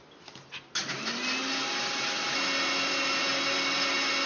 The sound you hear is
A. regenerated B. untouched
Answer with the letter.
B